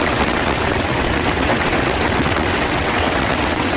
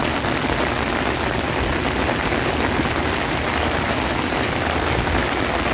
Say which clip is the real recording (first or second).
second